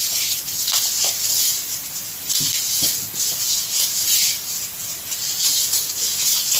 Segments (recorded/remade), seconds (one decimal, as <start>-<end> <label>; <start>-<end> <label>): 0.0-6.6 recorded